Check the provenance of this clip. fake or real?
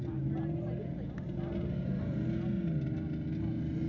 real